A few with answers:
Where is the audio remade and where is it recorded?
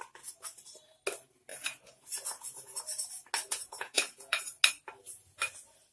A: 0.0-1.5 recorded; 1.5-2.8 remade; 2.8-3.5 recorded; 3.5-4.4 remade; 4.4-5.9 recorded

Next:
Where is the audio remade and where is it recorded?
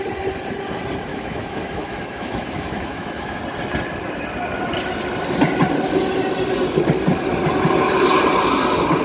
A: 0.0-1.1 recorded; 1.1-3.4 remade; 3.4-9.0 recorded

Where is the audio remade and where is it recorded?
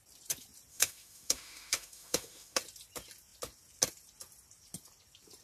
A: 0.0-0.7 recorded; 0.7-2.6 remade; 2.6-5.4 recorded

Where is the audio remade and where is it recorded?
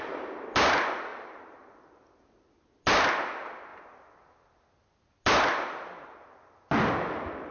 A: 0.0-1.1 recorded; 1.1-1.7 remade; 1.7-7.5 recorded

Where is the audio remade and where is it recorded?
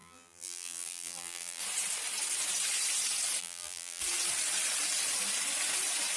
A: 0.0-1.6 remade; 1.6-3.4 recorded; 3.4-4.0 remade; 4.0-6.2 recorded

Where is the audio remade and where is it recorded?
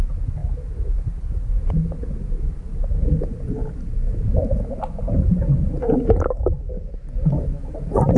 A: 0.0-8.2 recorded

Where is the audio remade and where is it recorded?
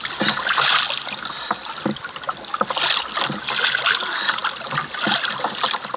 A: 0.0-6.0 recorded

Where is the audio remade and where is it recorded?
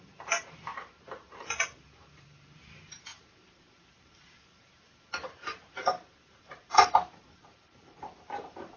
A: 0.0-8.8 remade